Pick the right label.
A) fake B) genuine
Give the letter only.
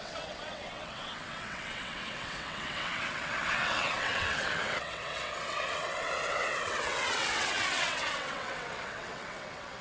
A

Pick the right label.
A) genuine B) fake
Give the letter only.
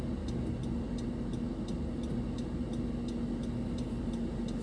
A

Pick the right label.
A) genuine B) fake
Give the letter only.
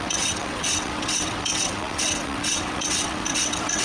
B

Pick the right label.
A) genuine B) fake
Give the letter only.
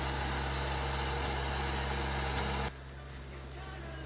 A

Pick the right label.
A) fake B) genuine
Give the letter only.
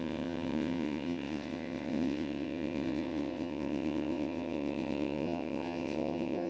A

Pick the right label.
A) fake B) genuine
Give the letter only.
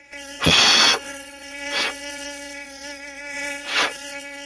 A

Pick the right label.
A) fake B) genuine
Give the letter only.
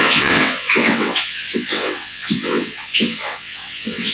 A